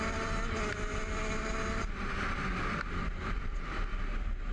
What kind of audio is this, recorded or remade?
recorded